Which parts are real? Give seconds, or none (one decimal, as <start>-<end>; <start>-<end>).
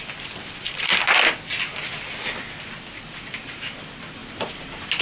0.0-5.0